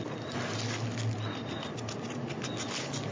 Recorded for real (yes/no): yes